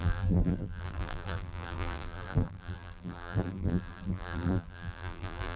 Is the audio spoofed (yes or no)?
yes